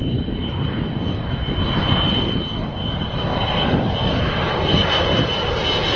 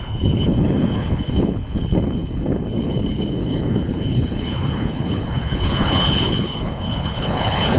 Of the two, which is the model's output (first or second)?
second